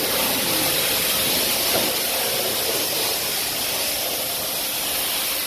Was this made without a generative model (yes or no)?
yes